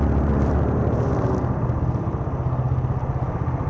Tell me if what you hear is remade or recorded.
recorded